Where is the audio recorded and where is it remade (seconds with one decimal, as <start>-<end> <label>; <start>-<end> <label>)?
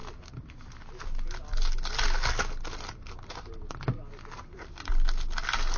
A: 0.0-5.8 recorded